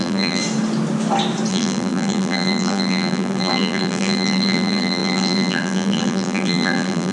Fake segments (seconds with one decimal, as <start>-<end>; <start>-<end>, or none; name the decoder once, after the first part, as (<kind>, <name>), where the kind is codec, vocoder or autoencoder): 0.0-0.4 (vocoder, BigVGAN v2); 1.5-7.1

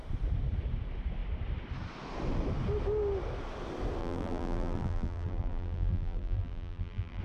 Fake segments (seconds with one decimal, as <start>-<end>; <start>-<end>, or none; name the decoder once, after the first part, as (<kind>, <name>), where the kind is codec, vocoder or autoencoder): 4.0-7.2 (vocoder, BigVGAN v2)